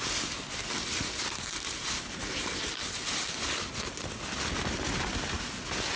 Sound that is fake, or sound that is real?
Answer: real